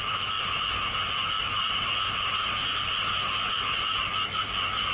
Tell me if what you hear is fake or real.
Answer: real